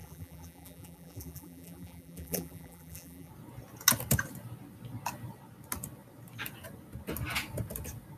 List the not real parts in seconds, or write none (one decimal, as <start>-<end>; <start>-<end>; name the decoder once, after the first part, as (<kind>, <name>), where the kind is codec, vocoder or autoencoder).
0.0-3.3 (vocoder, BigVGAN v2)